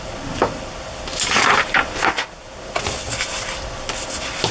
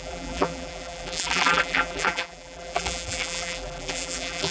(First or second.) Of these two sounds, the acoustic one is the first